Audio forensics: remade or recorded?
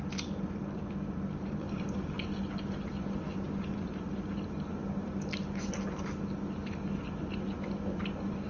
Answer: recorded